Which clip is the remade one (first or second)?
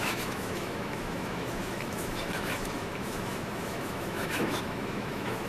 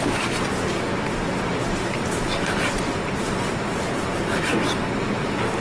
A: first